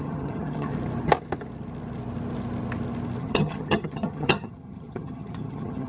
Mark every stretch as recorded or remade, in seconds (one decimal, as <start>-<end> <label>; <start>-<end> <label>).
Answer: 0.0-0.7 remade; 0.7-3.2 recorded; 3.2-5.9 remade